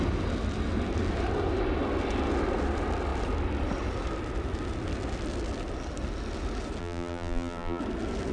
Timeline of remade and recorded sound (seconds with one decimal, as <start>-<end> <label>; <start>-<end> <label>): 0.0-6.8 recorded; 6.8-7.8 remade; 7.8-8.3 recorded